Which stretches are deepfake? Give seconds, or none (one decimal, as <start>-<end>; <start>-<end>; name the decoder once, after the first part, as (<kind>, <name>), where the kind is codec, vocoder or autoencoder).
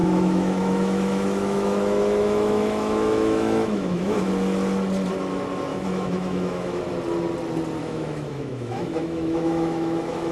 0.0-4.3 (autoencoder, DAC-VAE); 5.7-6.8; 7.8-10.3